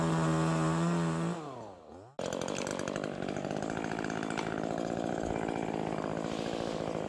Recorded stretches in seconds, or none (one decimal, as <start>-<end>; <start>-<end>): 0.0-7.1